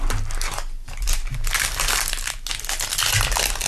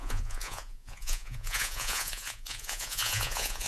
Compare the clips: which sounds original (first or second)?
first